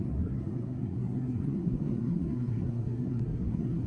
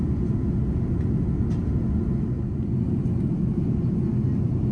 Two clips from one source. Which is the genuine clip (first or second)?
second